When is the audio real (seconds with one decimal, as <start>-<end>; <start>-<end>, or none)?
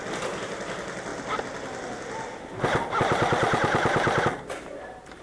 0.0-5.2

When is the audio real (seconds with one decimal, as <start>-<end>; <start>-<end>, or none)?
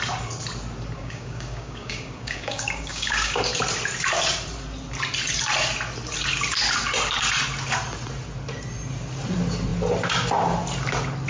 0.0-1.0; 3.5-11.3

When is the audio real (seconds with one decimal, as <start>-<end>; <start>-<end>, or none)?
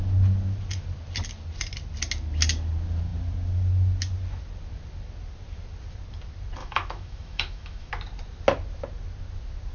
0.0-6.6; 7.9-9.7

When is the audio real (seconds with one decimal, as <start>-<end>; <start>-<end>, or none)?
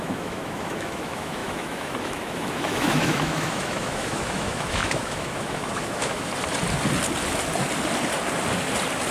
6.3-9.1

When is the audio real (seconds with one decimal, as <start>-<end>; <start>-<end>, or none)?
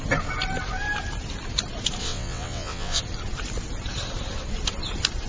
0.0-2.0; 3.0-5.3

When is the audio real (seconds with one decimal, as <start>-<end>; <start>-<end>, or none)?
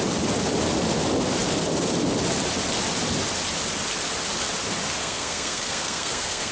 0.0-5.0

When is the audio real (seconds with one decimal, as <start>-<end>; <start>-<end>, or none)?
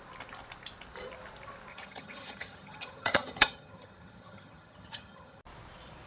0.0-1.7; 5.4-6.1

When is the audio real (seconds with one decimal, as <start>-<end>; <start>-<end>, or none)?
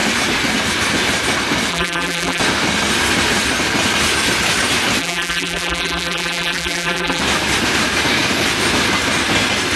0.0-1.7; 2.4-5.0; 7.2-9.8